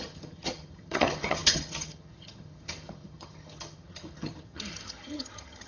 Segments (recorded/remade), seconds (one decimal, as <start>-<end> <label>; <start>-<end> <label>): 0.0-5.7 remade